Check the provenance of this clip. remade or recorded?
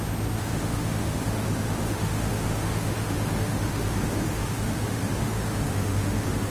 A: remade